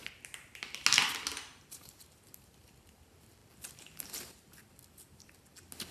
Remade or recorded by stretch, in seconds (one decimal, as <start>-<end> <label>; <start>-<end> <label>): 0.0-5.9 recorded